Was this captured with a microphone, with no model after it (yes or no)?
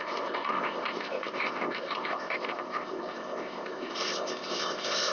no